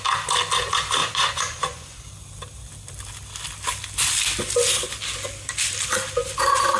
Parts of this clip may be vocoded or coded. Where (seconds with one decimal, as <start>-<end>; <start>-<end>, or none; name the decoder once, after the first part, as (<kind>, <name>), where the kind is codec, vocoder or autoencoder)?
1.0-2.0 (vocoder, Vocos)